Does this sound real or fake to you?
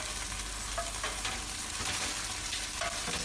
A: real